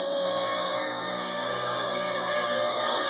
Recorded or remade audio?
remade